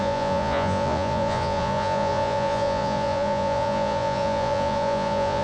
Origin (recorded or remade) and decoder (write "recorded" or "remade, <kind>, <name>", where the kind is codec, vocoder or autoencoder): remade, vocoder, Vocos